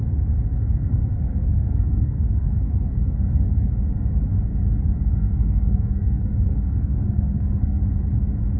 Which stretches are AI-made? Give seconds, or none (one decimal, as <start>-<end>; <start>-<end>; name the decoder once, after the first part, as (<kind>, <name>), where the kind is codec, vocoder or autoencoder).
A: 0.6-3.7 (codec, SNAC); 5.0-7.8